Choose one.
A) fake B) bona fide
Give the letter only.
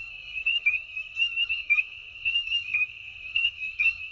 A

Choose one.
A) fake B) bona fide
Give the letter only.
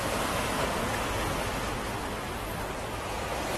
B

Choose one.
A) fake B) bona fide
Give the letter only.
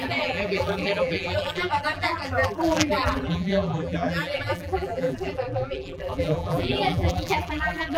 A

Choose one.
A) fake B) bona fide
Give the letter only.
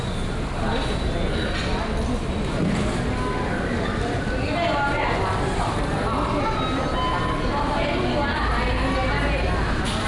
B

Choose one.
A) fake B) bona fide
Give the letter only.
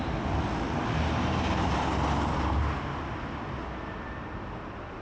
B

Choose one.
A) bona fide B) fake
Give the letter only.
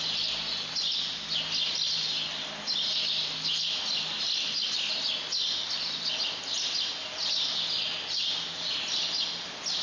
A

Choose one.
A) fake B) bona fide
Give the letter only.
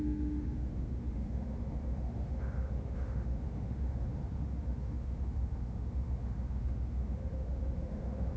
A